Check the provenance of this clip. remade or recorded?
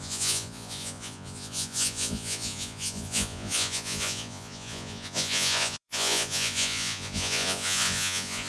remade